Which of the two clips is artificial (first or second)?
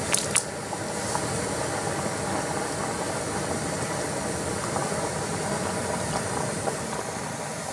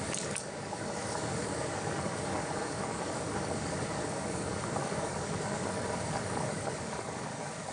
second